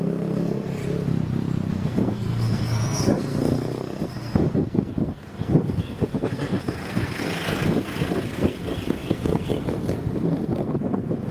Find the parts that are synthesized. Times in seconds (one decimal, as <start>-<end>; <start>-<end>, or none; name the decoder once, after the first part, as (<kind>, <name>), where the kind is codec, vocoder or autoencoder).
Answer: 0.0-0.8 (codec, SNAC); 1.7-11.3